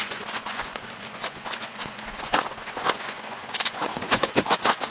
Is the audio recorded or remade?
remade